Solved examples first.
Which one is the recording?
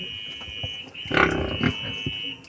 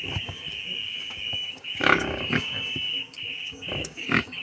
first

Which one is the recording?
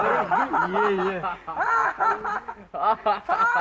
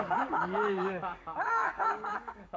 first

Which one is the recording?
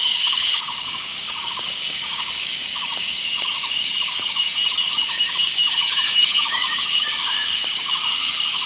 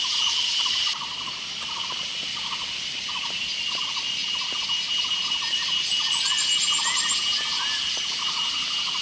second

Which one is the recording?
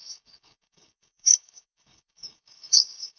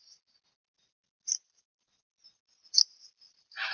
second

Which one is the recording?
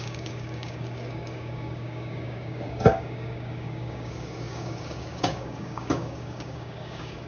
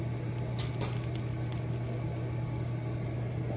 second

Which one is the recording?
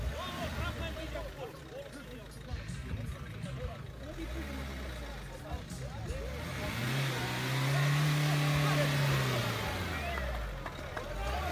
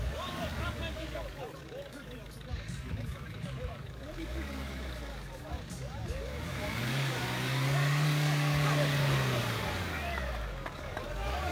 first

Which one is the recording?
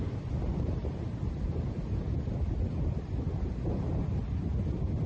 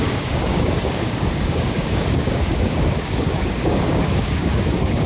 first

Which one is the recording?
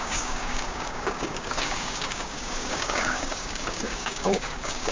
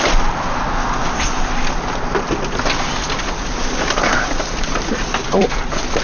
second